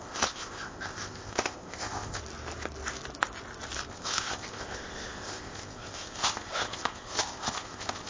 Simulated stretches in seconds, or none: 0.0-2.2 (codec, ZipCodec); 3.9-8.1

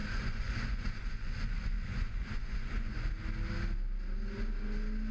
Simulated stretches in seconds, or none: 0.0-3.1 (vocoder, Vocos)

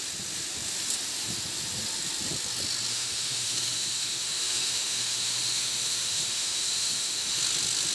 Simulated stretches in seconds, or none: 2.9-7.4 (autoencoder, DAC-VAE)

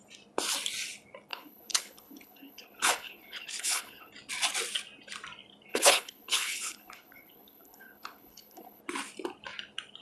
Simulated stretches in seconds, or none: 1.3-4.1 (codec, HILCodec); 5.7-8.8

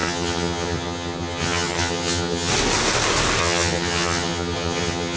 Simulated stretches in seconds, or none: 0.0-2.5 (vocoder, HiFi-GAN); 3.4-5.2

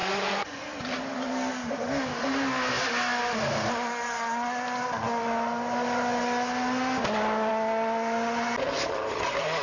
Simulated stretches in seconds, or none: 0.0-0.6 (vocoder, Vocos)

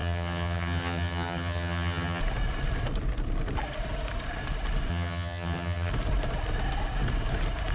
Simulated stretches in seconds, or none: 0.0-2.2 (vocoder, HiFi-GAN); 4.9-5.9